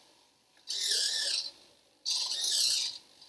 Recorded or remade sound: recorded